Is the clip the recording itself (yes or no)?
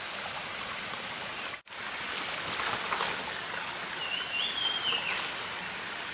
yes